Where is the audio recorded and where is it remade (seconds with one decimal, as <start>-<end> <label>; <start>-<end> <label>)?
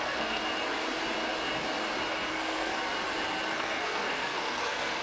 0.0-0.4 remade; 0.4-2.3 recorded; 2.3-2.7 remade; 2.7-3.5 recorded; 3.5-5.0 remade